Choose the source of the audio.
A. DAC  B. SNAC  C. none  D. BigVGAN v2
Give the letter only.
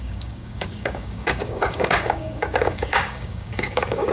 A